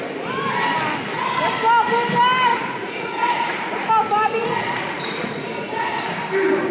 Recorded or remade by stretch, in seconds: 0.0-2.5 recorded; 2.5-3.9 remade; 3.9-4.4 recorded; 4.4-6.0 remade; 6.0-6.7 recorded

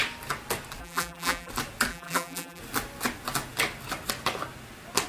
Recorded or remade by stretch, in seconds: 0.0-0.8 recorded; 0.8-1.5 remade; 1.5-1.9 recorded; 1.9-2.6 remade; 2.6-5.1 recorded

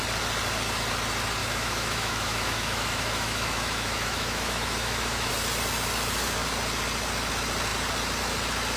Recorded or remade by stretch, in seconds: 0.0-1.4 recorded; 1.4-5.3 remade; 5.3-8.8 recorded